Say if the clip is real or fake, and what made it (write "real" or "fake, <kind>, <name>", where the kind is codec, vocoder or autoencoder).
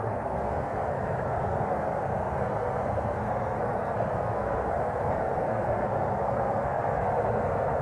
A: fake, codec, SNAC